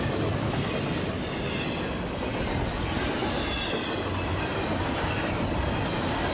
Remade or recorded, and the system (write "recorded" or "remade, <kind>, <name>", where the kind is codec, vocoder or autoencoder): recorded